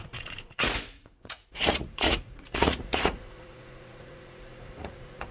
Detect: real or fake fake